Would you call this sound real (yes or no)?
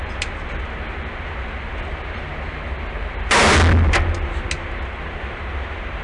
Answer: yes